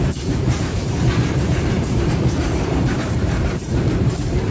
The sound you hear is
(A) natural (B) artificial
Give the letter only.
B